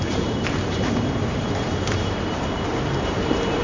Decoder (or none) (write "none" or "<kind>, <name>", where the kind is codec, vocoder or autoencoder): vocoder, BigVGAN v2